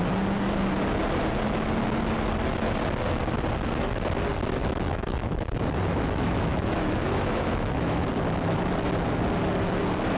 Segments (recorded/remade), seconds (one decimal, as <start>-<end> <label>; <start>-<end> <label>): 0.0-4.6 recorded; 4.6-8.0 remade; 8.0-10.2 recorded

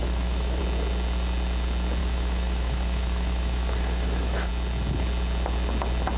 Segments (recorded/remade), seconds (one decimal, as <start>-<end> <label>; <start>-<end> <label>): 0.0-0.6 remade; 0.6-2.0 recorded; 2.0-4.5 remade; 4.5-6.2 recorded